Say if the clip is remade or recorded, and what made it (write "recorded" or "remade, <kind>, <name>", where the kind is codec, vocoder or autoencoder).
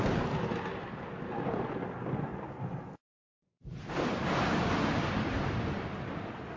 recorded